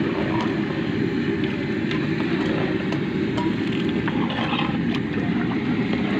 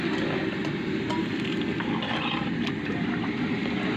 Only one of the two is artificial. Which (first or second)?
first